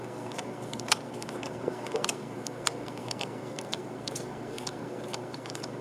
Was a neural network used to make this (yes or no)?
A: yes